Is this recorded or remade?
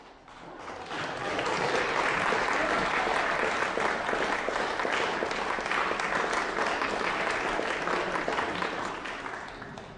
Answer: recorded